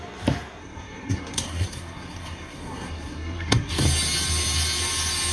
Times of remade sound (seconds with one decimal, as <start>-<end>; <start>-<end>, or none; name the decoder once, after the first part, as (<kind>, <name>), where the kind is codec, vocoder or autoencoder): 0.6-3.8 (codec, SNAC)